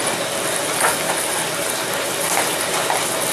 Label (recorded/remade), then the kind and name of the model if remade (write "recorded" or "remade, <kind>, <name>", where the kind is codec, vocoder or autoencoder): recorded